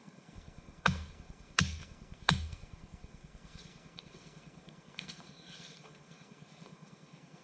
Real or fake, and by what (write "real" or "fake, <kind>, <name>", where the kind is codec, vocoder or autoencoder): fake, codec, SNAC